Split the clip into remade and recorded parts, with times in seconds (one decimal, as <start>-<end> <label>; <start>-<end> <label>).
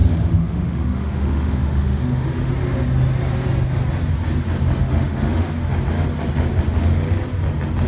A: 0.0-2.5 remade; 2.5-4.8 recorded; 4.8-5.5 remade; 5.5-7.9 recorded